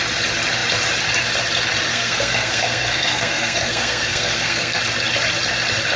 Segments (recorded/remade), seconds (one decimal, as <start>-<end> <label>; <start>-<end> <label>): 0.0-1.9 recorded; 1.9-4.8 remade; 4.8-6.0 recorded

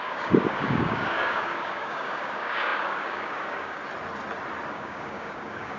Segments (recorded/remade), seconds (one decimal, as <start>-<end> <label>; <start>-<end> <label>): 0.0-3.8 remade; 3.8-4.7 recorded; 4.7-5.8 remade

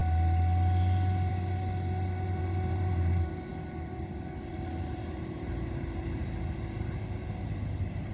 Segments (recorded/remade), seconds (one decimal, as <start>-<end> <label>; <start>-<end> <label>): 0.0-1.3 recorded; 1.3-6.2 remade; 6.2-8.1 recorded

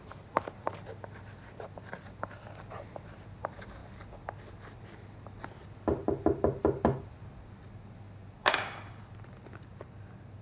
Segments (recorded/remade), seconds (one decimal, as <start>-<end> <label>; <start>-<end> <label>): 0.0-8.4 recorded; 8.4-9.0 remade; 9.0-10.4 recorded